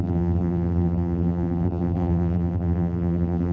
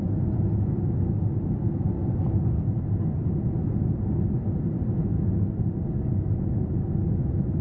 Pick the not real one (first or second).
first